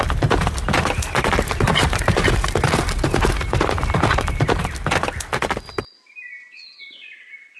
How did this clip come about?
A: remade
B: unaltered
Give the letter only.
B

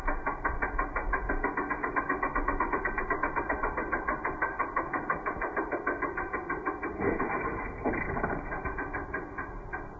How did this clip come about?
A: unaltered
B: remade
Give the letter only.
A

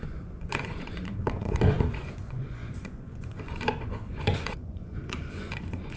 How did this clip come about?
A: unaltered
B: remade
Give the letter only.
B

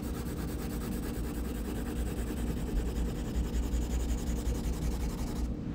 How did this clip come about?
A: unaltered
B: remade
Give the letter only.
A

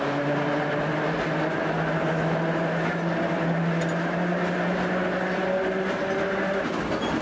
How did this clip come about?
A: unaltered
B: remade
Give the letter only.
A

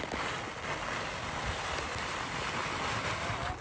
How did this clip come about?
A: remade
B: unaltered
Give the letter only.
B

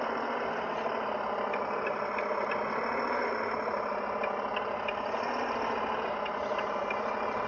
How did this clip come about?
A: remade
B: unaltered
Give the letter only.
B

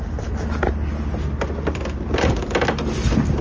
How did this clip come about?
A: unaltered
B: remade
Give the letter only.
A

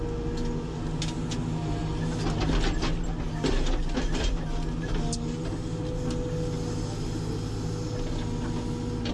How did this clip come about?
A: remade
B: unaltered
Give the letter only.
B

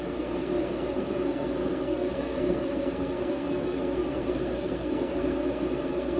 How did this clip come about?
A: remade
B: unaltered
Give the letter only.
A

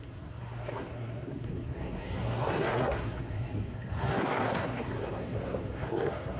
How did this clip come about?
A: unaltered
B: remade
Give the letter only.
B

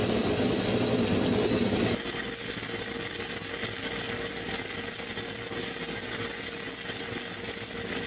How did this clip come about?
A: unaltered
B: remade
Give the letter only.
A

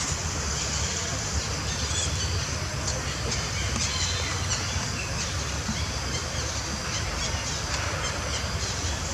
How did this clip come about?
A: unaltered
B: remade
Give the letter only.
B